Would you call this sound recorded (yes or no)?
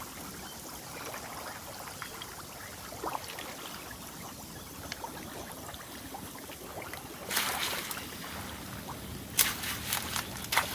yes